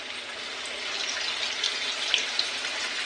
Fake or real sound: real